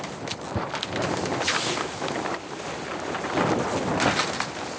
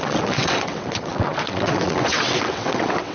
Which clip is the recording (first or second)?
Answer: first